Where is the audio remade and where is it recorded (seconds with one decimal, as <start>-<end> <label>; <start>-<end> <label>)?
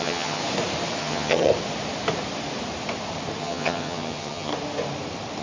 0.0-0.4 remade; 0.4-1.0 recorded; 1.0-1.5 remade; 1.5-3.4 recorded; 3.4-4.5 remade; 4.5-5.4 recorded